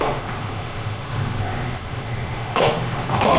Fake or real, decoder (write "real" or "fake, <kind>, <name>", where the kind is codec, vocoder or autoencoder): fake, autoencoder, DAC-VAE